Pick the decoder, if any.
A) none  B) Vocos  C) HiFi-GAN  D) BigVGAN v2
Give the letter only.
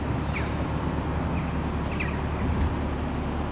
A